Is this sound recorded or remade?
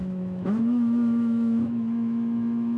remade